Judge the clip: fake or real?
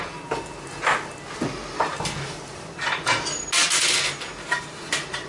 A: real